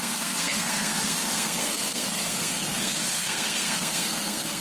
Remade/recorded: remade